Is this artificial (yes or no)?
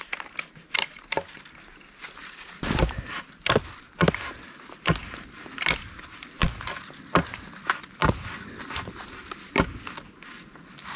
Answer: no